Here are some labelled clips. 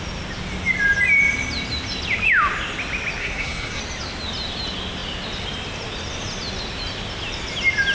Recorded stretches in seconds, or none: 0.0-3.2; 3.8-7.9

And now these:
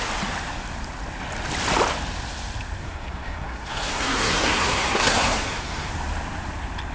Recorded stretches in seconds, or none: 0.0-2.8; 5.9-6.9

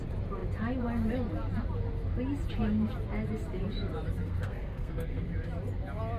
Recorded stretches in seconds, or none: 0.0-4.2; 5.2-6.2

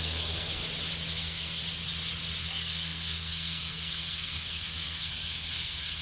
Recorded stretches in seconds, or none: 0.6-1.1; 1.6-2.4

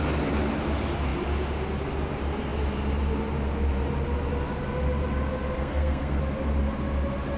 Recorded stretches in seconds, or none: 0.0-5.6; 6.2-7.4

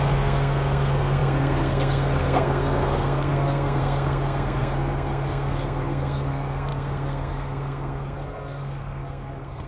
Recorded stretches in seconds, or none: none

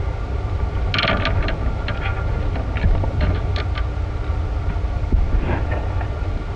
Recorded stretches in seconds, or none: 0.0-6.6